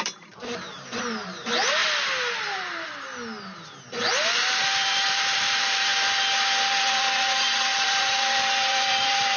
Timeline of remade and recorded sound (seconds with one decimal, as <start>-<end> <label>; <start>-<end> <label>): 0.0-1.8 remade; 1.8-2.4 recorded; 2.4-3.1 remade; 3.1-4.1 recorded; 4.1-5.9 remade; 5.9-6.8 recorded; 6.8-9.4 remade